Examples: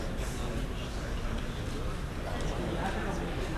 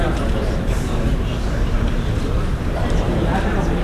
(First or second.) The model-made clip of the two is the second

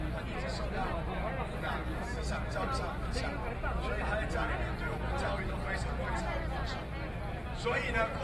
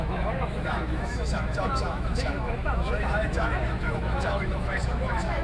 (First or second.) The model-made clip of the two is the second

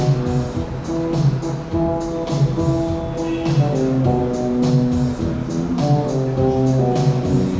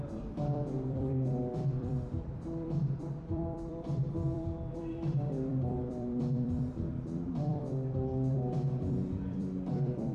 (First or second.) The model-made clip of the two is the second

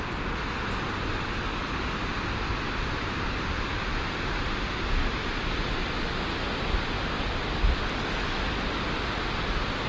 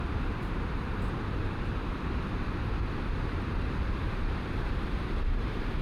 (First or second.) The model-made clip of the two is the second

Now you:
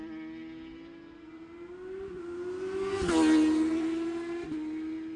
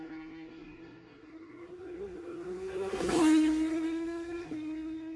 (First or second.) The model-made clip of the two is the second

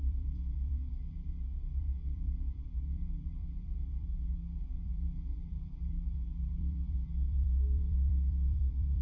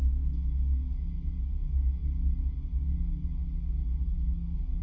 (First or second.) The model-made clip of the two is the first